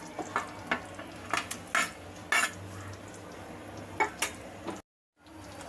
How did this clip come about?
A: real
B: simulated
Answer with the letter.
A